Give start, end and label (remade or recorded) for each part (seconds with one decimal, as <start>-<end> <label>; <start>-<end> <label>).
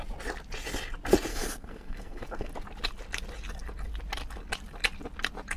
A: 0.0-1.3 recorded; 1.3-2.5 remade; 2.5-5.6 recorded